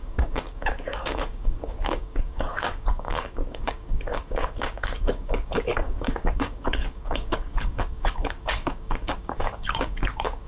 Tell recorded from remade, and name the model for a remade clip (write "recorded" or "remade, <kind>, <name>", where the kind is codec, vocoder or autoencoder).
remade, codec, DAC